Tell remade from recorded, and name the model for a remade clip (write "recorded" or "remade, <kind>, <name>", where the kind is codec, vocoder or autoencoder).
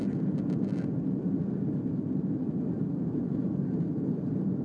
recorded